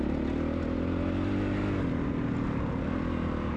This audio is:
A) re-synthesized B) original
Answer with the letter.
B